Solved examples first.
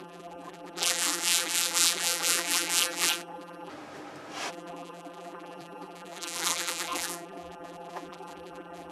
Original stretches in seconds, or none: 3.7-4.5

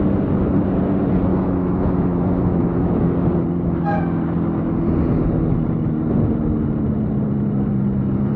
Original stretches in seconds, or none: 0.0-1.3; 3.0-8.4